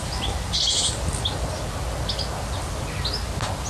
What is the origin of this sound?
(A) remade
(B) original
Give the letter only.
B